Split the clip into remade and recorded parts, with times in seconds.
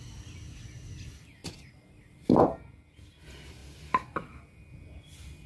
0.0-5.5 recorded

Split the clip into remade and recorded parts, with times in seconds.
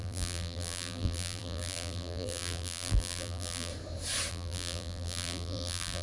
0.0-3.7 remade; 3.7-4.3 recorded; 4.3-6.0 remade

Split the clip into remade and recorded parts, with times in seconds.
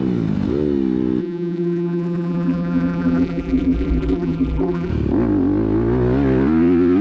0.0-1.2 recorded; 1.2-4.9 remade; 4.9-7.0 recorded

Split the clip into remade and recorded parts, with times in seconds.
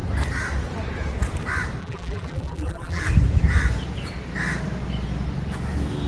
0.0-1.8 recorded; 1.8-3.0 remade; 3.0-6.1 recorded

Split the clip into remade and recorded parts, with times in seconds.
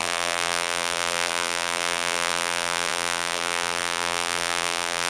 0.0-5.1 remade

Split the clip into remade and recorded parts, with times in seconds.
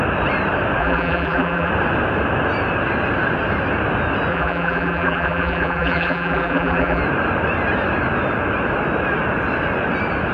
0.0-0.8 recorded; 0.8-1.7 remade; 1.7-4.3 recorded; 4.3-7.0 remade; 7.0-10.3 recorded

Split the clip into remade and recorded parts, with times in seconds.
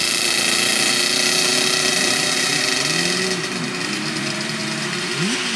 0.0-5.6 recorded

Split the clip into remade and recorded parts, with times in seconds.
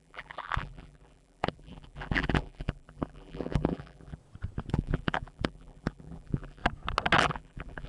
0.0-4.2 remade; 4.2-4.7 recorded; 4.7-6.6 remade; 6.6-7.2 recorded; 7.2-7.9 remade